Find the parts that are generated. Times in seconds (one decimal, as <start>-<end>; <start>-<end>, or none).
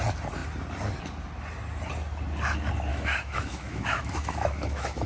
2.9-5.1